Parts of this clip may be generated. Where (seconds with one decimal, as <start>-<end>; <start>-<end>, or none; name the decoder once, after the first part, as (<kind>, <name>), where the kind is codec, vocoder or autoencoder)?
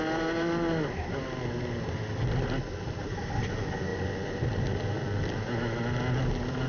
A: none